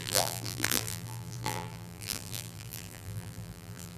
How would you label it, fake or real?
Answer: fake